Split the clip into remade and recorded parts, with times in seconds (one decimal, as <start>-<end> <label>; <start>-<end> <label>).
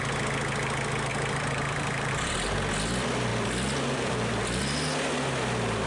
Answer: 0.0-1.1 recorded; 1.1-2.1 remade; 2.1-3.3 recorded; 3.3-4.6 remade; 4.6-5.9 recorded